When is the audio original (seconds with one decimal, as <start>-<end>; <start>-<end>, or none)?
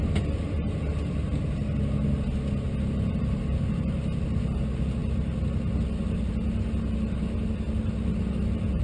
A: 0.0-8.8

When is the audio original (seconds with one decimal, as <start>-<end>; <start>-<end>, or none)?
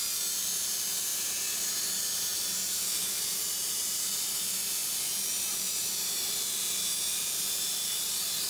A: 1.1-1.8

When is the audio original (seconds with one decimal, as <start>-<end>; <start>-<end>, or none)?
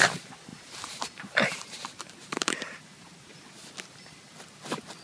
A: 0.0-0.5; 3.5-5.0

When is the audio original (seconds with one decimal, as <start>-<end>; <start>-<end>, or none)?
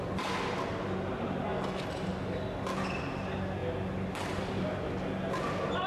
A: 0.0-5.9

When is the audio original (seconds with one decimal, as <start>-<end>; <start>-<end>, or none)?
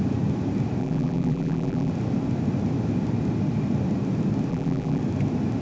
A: 0.0-0.8; 1.9-4.5; 5.0-5.6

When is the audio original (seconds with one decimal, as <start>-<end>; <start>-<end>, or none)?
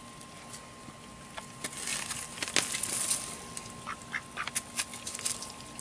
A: 0.0-5.8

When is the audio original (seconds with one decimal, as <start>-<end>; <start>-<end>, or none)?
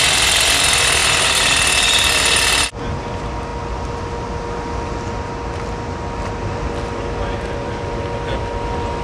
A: 0.0-9.0